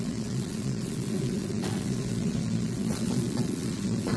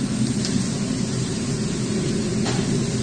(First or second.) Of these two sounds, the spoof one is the first